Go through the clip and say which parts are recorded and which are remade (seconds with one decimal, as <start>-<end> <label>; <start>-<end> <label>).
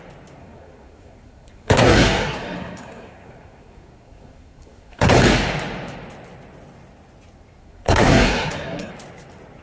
0.0-0.4 recorded; 0.4-5.1 remade; 5.1-7.6 recorded; 7.6-8.9 remade; 8.9-9.6 recorded